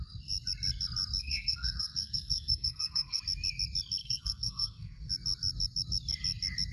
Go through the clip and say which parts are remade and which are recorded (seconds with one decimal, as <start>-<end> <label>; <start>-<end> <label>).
0.0-1.2 recorded; 1.2-3.2 remade; 3.2-4.0 recorded; 4.0-5.1 remade; 5.1-6.7 recorded